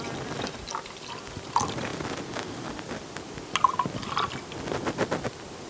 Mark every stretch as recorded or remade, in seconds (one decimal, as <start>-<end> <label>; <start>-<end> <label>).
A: 0.0-1.9 remade; 1.9-5.3 recorded; 5.3-5.7 remade